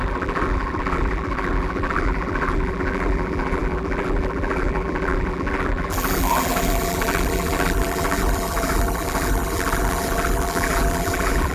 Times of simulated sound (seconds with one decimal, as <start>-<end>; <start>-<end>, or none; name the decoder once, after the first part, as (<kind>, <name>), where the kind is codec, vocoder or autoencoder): 0.0-11.5 (vocoder, BigVGAN v2)